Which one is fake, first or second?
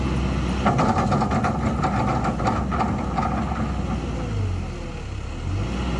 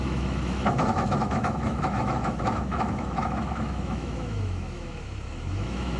second